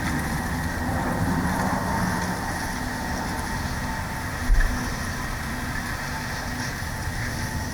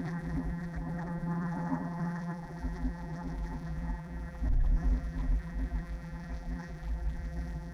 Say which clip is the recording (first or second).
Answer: first